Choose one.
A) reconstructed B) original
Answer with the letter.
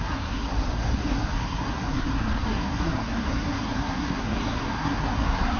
A